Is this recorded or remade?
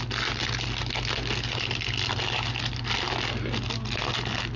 recorded